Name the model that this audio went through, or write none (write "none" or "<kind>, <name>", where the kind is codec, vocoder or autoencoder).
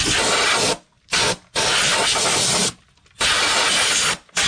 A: none